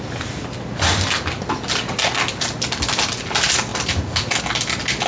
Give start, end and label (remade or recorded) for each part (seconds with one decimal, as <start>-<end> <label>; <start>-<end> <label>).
0.0-5.1 recorded

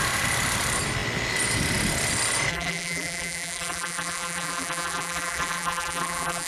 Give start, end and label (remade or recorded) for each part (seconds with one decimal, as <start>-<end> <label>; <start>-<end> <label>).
0.0-2.5 recorded; 2.5-6.5 remade